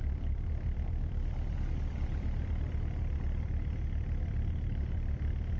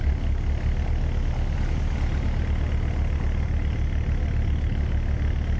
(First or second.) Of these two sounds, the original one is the second